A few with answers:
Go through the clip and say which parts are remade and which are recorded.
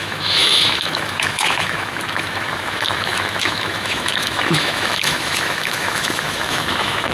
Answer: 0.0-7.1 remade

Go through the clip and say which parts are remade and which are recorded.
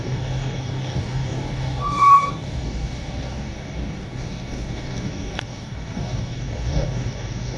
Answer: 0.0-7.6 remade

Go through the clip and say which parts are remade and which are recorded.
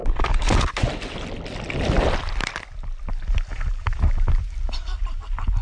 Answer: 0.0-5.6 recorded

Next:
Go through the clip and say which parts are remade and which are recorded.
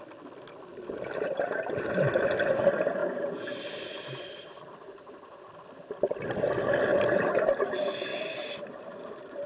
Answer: 0.0-3.0 recorded; 3.0-5.4 remade; 5.4-6.9 recorded; 6.9-7.5 remade; 7.5-9.5 recorded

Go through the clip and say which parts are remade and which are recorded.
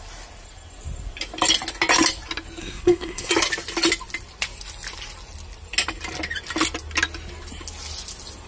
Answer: 0.0-2.6 recorded; 2.6-3.3 remade; 3.3-8.5 recorded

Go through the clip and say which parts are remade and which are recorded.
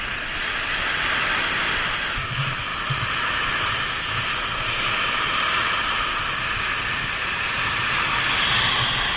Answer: 0.0-9.2 recorded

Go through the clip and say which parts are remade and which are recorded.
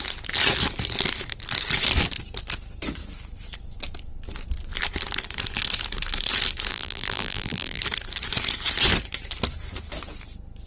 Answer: 0.0-6.7 recorded; 6.7-7.8 remade; 7.8-10.7 recorded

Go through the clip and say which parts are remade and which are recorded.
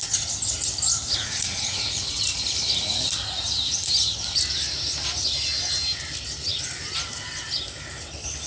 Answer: 0.0-0.9 recorded; 0.9-2.4 remade; 2.4-8.5 recorded